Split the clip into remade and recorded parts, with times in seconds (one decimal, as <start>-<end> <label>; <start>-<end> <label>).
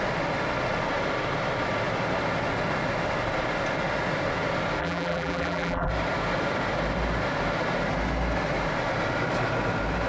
0.0-4.8 recorded; 4.8-5.9 remade; 5.9-10.1 recorded